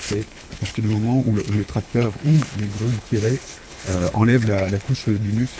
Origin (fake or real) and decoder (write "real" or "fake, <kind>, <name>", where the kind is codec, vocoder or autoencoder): fake, codec, HILCodec